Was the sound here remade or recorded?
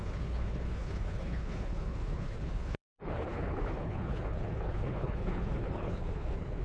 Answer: remade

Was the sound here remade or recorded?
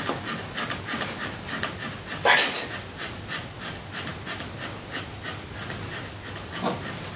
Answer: recorded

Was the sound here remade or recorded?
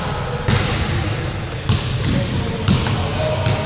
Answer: recorded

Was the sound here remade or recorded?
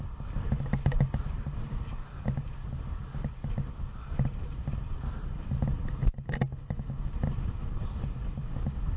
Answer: recorded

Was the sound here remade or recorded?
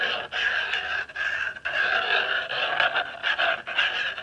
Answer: recorded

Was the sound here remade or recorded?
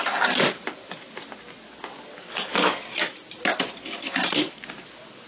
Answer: recorded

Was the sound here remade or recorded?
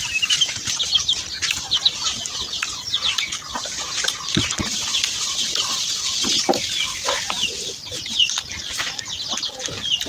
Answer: recorded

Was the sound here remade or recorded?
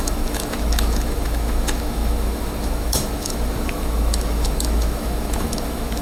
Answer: remade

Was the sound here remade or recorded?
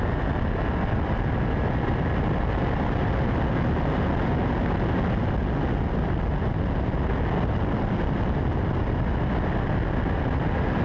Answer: recorded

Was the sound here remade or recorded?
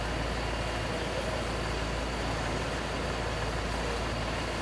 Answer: recorded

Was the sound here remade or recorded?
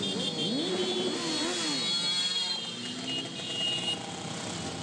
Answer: recorded